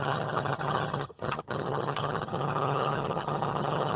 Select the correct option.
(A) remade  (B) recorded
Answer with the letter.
A